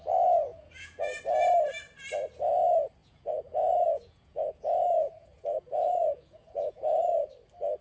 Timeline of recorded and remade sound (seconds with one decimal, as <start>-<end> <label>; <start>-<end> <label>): 0.0-0.5 recorded; 0.5-1.2 remade; 1.2-3.0 recorded; 3.0-7.3 remade; 7.3-7.8 recorded